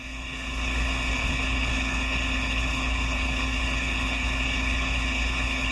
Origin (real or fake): fake